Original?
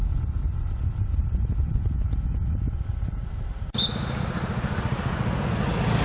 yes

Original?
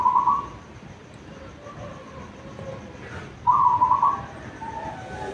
yes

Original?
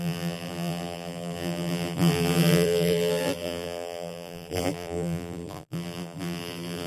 no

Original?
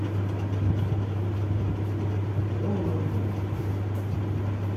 yes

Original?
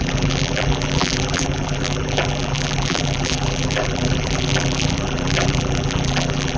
no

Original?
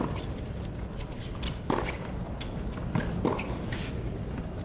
no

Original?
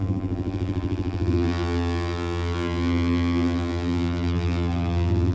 no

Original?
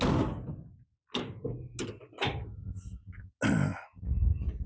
yes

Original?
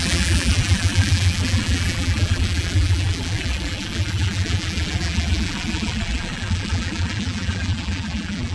no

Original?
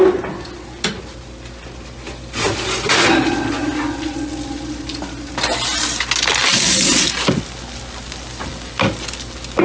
yes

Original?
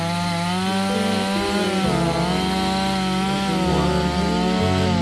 yes